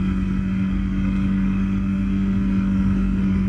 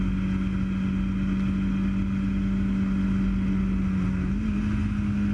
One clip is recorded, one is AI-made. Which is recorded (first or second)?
second